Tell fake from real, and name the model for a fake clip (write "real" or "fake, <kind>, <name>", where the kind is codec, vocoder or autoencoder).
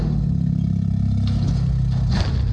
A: real